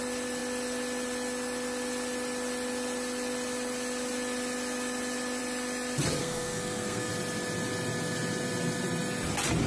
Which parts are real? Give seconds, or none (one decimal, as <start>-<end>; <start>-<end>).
0.0-6.2; 7.1-9.7